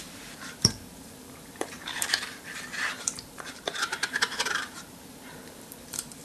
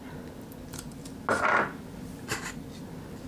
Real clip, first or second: second